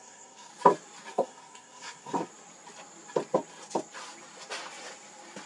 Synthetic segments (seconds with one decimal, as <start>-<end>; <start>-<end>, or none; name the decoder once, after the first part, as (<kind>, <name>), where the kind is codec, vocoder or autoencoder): 0.0-0.5 (codec, SNAC); 1.1-2.3